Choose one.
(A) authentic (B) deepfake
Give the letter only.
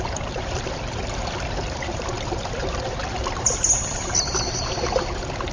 A